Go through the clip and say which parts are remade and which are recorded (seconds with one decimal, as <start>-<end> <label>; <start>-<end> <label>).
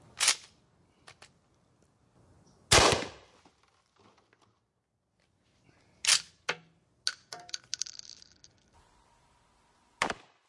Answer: 0.0-10.5 recorded